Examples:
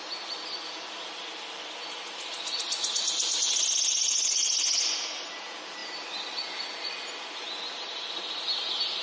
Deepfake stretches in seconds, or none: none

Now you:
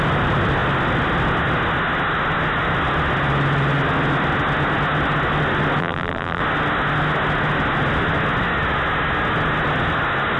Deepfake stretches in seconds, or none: 5.8-6.4

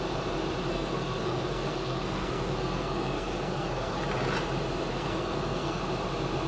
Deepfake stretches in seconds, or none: 0.7-4.0; 4.9-5.8

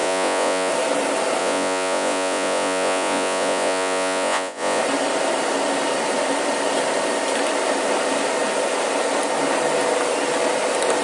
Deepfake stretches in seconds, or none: 0.0-0.7; 1.4-4.8

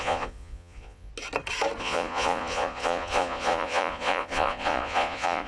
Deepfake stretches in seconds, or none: 0.0-1.1; 1.8-5.5